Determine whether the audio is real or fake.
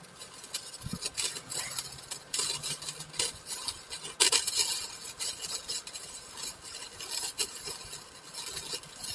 real